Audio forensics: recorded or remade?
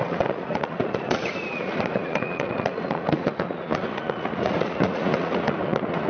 remade